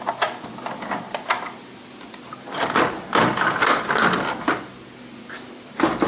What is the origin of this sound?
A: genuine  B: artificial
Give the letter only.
A